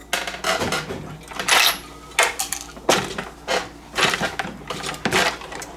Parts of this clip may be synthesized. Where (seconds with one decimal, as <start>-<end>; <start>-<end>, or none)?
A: none